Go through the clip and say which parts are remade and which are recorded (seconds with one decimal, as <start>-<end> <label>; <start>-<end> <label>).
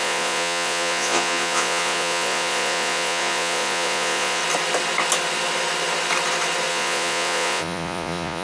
0.0-4.4 remade; 4.4-6.7 recorded; 6.7-8.4 remade